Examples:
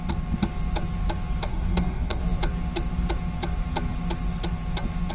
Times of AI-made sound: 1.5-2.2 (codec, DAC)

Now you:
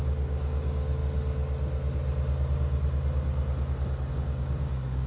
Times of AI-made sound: 0.0-1.0 (codec, DAC); 4.1-5.1

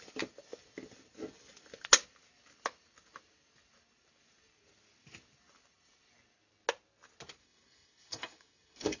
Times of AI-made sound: 7.4-9.0 (codec, DAC)

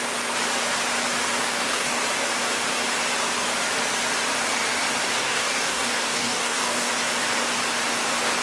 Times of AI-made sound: 1.4-2.0 (codec, DAC); 5.2-6.9

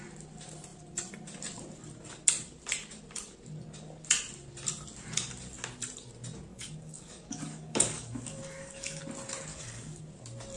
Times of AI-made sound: 6.5-9.0 (codec, DAC); 9.5-10.0

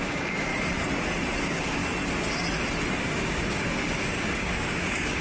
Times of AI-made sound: 0.0-0.5 (codec, DAC); 1.4-1.8; 3.0-5.2

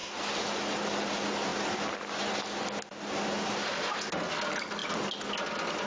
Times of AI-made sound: none